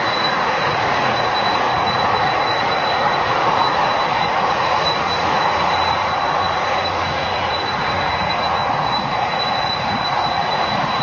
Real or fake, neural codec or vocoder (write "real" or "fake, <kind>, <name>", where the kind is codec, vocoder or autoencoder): fake, vocoder, Vocos